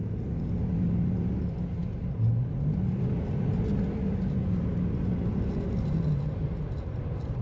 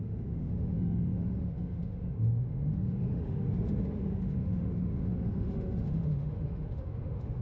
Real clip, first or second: first